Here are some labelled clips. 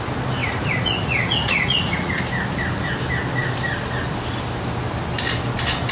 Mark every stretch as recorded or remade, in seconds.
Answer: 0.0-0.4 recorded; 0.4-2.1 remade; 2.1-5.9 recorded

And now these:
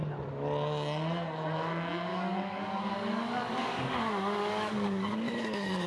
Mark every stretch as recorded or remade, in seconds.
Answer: 0.0-2.1 recorded; 2.1-5.9 remade

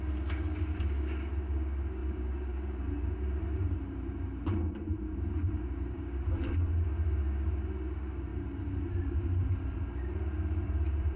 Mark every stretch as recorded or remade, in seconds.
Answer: 0.0-2.0 recorded; 2.0-6.0 remade; 6.0-8.3 recorded; 8.3-11.2 remade